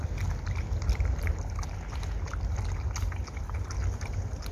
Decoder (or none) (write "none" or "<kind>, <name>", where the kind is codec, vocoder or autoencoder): none